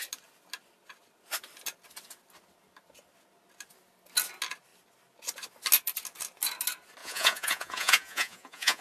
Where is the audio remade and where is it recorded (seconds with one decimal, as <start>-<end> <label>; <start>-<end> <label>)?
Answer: 0.0-7.0 recorded; 7.0-8.8 remade